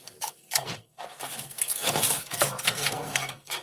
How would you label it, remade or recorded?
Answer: remade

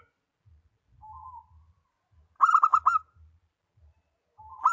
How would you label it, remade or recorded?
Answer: recorded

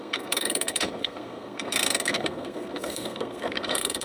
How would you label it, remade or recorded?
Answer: remade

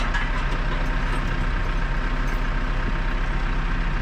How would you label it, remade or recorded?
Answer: recorded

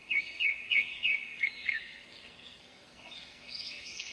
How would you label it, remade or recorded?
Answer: remade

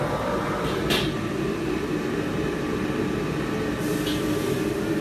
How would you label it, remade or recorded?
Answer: recorded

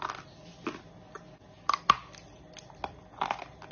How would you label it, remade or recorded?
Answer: recorded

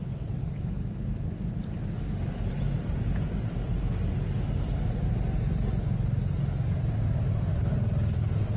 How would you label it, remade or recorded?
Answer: recorded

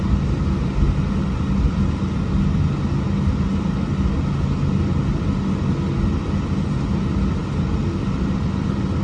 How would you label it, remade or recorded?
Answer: recorded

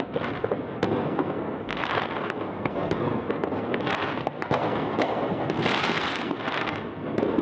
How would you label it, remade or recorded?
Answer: remade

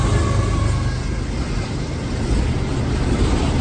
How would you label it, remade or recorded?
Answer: recorded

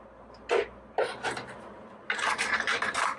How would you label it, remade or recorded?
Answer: recorded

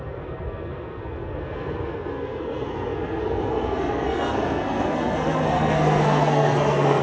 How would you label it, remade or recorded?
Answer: remade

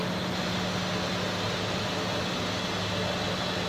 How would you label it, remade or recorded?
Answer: recorded